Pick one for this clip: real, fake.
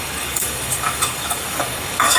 fake